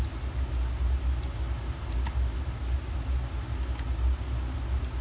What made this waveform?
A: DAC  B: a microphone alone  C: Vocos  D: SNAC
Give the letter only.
B